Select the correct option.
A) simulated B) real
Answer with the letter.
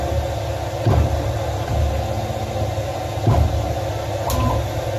B